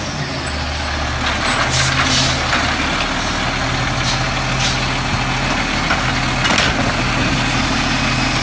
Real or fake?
real